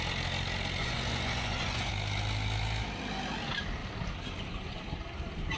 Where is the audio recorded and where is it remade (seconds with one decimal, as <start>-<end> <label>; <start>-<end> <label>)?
0.0-0.8 recorded; 0.8-1.9 remade; 1.9-5.6 recorded